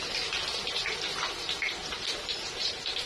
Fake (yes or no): no